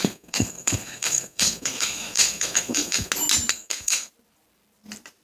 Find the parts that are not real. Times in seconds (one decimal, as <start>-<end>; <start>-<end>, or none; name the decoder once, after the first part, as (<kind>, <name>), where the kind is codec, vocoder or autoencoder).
0.0-3.1 (codec, SNAC); 3.5-4.1